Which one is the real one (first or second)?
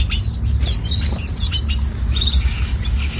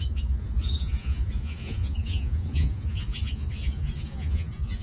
first